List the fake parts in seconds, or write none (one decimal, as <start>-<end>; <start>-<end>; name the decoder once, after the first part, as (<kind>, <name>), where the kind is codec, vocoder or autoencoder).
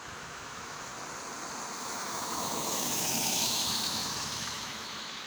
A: 0.0-0.9 (autoencoder, DAC-VAE); 1.8-5.3